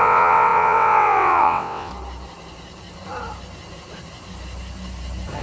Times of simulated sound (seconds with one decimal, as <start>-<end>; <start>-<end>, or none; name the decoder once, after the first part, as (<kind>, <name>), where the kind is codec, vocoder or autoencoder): 0.0-1.9 (vocoder, WaveNeXt)